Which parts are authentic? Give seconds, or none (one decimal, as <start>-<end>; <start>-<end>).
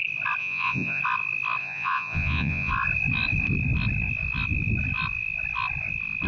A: 0.0-0.4; 1.0-1.6; 2.7-6.3